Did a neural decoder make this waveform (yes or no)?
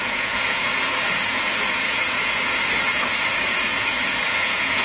yes